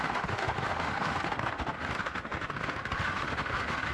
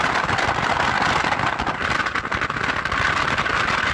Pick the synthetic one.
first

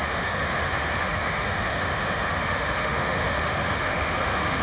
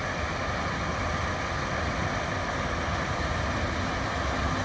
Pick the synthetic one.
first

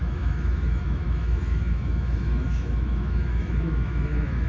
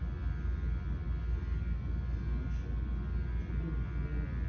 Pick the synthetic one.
first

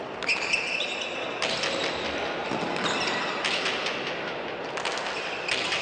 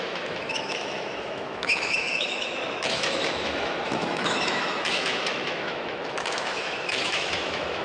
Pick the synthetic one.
second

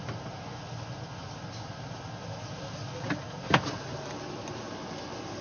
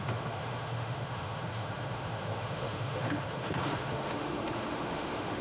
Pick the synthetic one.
second